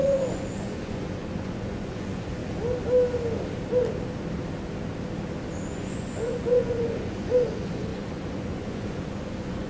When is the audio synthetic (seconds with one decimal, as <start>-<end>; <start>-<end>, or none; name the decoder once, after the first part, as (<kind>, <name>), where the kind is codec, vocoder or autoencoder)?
0.0-2.4 (vocoder, Vocos); 5.7-9.7